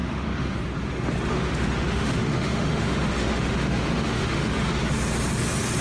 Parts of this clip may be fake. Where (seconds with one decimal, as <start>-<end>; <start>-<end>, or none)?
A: 0.0-0.6; 1.3-4.8